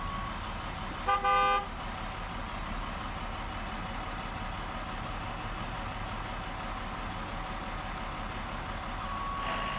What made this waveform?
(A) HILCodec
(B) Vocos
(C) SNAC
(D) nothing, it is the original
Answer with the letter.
D